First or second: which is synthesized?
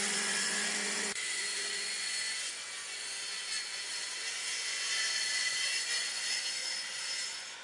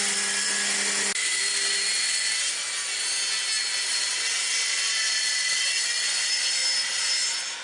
first